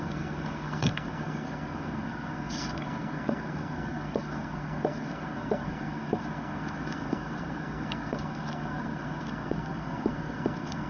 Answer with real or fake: fake